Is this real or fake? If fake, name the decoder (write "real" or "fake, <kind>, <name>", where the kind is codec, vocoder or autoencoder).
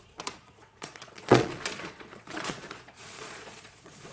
fake, vocoder, Vocos